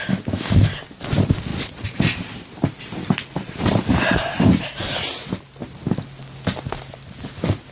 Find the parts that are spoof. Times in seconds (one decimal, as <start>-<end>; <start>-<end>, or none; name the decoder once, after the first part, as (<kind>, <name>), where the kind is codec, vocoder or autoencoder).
0.0-0.7 (autoencoder, DAC-VAE)